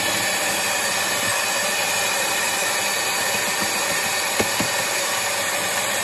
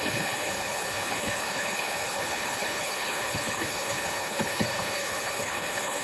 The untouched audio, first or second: first